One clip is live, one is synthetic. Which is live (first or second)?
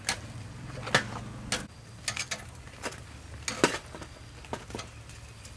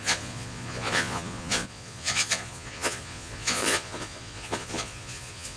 first